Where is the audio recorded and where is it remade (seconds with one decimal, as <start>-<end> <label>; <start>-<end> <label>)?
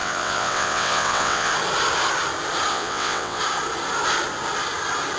0.0-1.5 remade; 1.5-2.7 recorded; 2.7-3.4 remade; 3.4-5.2 recorded